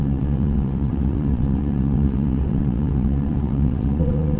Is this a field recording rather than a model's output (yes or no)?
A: no